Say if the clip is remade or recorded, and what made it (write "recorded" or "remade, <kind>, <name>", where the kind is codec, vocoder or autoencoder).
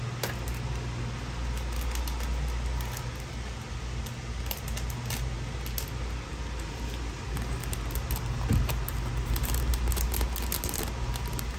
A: recorded